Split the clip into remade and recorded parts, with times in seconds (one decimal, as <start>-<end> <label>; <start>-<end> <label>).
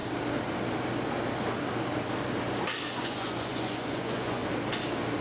0.0-3.0 recorded; 3.0-4.4 remade; 4.4-5.2 recorded